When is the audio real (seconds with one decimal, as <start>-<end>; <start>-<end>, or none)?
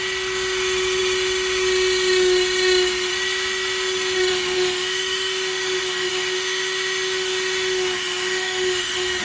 0.0-4.3